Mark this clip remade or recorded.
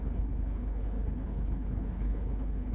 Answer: remade